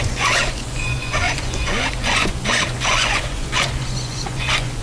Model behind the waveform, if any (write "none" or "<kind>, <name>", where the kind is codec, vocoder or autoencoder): vocoder, Vocos